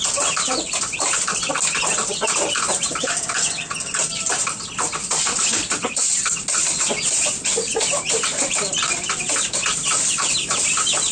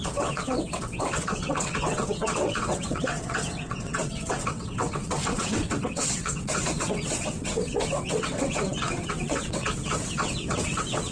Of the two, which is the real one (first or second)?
first